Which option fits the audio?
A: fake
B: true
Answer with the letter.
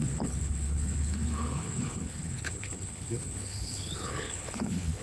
A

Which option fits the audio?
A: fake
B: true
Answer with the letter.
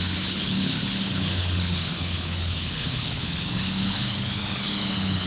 A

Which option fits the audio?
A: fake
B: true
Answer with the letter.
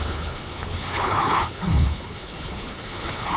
A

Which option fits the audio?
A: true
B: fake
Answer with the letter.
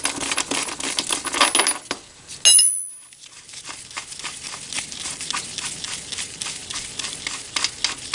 A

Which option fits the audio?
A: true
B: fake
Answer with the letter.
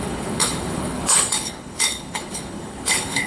B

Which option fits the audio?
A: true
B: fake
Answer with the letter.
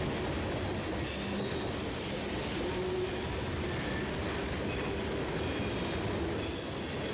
A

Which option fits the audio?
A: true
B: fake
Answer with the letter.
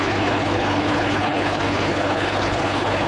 B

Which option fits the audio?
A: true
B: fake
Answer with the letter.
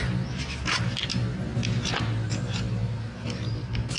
A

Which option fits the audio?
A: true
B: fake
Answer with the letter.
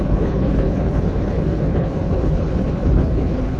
B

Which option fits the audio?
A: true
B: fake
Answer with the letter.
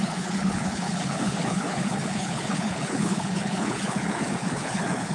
B